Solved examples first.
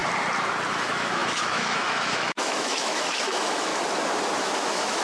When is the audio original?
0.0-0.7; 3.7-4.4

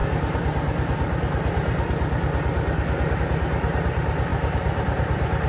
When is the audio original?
0.0-4.3

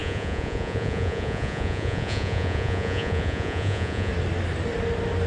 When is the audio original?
4.1-5.3

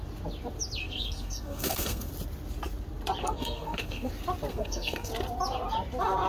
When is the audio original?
0.0-0.8; 2.1-3.2; 4.1-4.5; 5.1-6.3